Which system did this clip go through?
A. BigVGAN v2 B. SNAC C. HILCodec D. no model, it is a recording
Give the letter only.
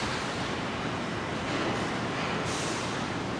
D